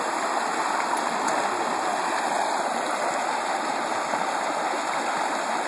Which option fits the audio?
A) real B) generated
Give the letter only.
A